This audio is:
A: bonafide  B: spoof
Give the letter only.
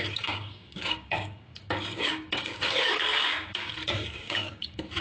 B